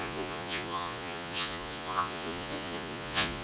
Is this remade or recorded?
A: remade